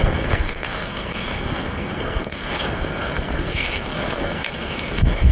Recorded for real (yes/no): no